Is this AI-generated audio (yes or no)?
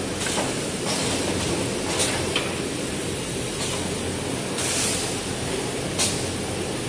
no